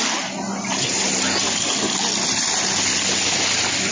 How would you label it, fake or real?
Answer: real